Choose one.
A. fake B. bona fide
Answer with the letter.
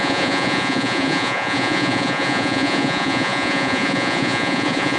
A